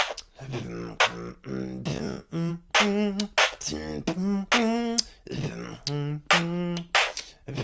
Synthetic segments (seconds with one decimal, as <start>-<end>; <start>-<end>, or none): 1.9-2.5